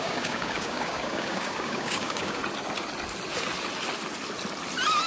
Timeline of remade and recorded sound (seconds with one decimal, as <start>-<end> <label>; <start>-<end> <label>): 0.0-2.4 remade; 2.4-5.1 recorded